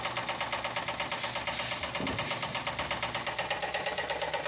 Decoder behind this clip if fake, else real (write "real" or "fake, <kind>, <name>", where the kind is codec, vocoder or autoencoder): real